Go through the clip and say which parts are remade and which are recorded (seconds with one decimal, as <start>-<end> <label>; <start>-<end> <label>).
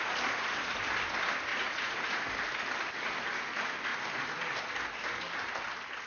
0.0-1.5 recorded; 1.5-2.3 remade; 2.3-6.1 recorded